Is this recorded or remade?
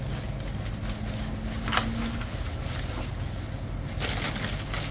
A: recorded